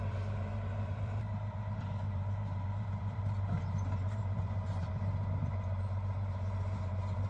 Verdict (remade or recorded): remade